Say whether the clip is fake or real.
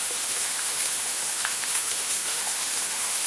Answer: fake